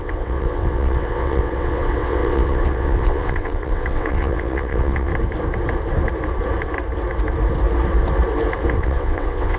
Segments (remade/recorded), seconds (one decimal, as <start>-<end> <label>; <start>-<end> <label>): 0.0-5.1 remade; 5.1-8.8 recorded; 8.8-9.6 remade